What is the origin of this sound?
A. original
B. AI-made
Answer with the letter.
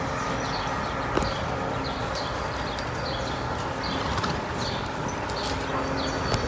A